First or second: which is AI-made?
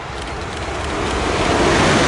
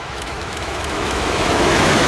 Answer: second